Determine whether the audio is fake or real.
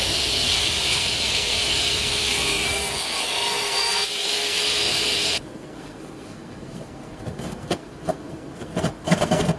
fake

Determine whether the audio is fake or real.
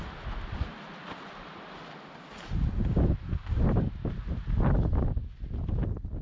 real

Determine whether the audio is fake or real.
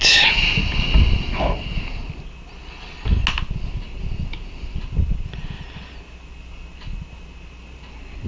real